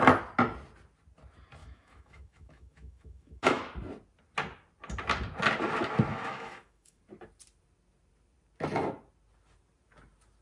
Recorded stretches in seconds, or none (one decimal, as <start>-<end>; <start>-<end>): 0.0-1.6; 3.6-6.1; 7.0-10.4